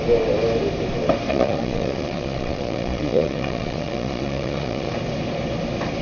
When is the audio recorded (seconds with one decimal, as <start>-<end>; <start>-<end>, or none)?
0.0-1.3; 4.9-6.0